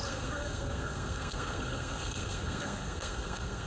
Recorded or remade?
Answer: remade